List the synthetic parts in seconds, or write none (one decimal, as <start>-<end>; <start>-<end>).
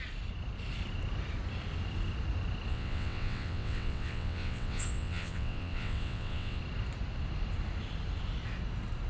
2.7-6.6